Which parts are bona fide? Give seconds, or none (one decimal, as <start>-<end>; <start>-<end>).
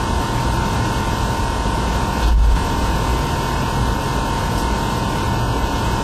0.0-6.0